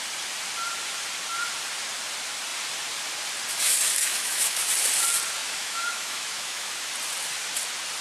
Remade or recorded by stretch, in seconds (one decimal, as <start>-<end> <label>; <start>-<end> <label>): 0.0-4.0 recorded; 4.0-4.7 remade; 4.7-5.4 recorded; 5.4-6.9 remade; 6.9-8.0 recorded